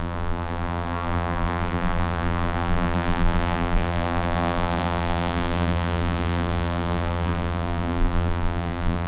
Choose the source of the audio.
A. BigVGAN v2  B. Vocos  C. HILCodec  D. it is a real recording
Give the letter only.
A